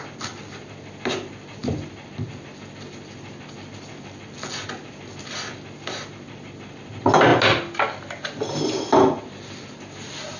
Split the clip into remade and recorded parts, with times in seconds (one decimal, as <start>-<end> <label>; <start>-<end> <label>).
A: 0.0-10.4 recorded